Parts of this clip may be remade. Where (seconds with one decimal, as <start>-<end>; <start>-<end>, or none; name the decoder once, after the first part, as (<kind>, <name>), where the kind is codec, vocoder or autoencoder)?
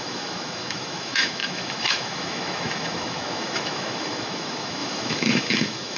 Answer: 0.0-6.0 (autoencoder, DAC-VAE)